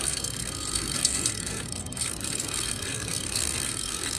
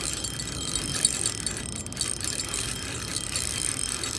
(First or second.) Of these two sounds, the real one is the second